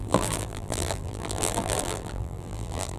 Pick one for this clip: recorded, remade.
remade